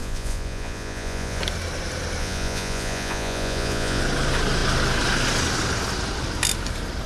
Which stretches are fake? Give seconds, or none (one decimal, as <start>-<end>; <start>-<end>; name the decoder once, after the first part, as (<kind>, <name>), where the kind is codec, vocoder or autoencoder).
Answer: 0.0-1.4 (vocoder, Vocos); 2.2-4.0